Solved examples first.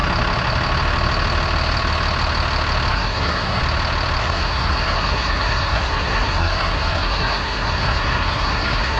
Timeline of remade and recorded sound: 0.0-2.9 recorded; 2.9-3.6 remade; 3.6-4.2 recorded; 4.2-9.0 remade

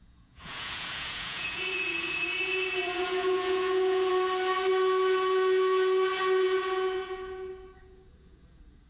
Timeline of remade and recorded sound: 0.0-4.1 remade; 4.1-4.7 recorded; 4.7-8.9 remade

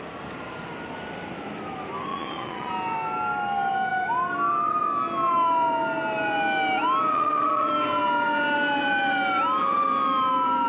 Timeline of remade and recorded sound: 0.0-2.1 recorded; 2.1-2.7 remade; 2.7-7.1 recorded; 7.1-7.7 remade; 7.7-10.7 recorded